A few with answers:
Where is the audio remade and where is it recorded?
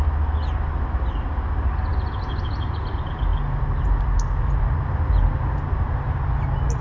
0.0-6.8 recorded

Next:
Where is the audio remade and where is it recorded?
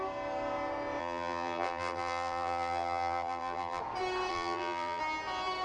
0.0-1.0 recorded; 1.0-3.8 remade; 3.8-4.3 recorded; 4.3-5.0 remade; 5.0-5.6 recorded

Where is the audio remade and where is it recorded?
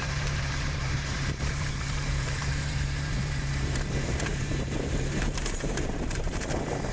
0.0-6.9 remade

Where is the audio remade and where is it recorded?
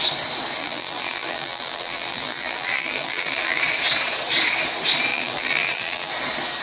0.0-0.6 recorded; 0.6-3.6 remade; 3.6-5.1 recorded; 5.1-6.1 remade; 6.1-6.6 recorded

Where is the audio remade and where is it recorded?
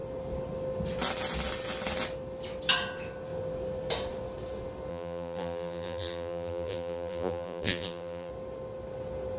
0.0-4.9 recorded; 4.9-8.3 remade; 8.3-9.4 recorded